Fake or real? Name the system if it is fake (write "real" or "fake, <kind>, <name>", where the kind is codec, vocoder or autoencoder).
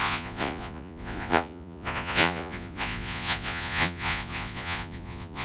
fake, vocoder, Vocos